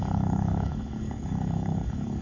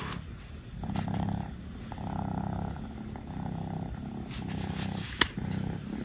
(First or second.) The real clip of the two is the second